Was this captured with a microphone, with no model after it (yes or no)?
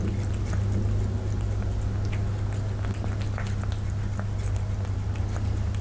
yes